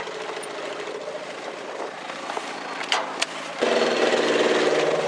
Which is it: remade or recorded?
recorded